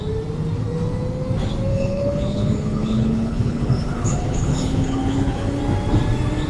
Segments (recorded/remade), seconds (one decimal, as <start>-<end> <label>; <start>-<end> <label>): 0.0-1.7 recorded; 1.7-5.6 remade; 5.6-6.5 recorded